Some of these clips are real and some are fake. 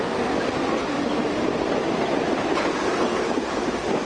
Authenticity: real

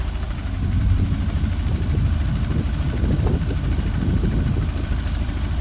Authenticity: fake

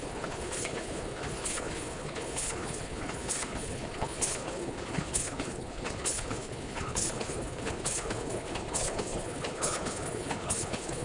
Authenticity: fake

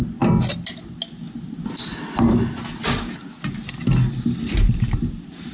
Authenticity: real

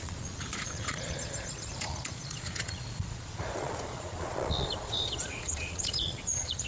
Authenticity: fake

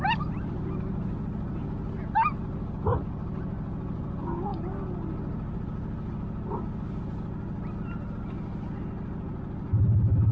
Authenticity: real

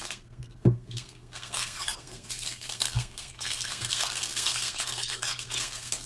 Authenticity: fake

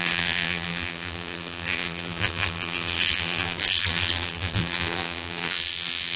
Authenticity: fake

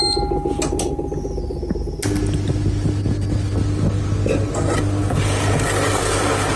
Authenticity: real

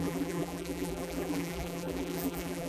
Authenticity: fake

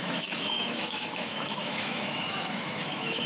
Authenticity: fake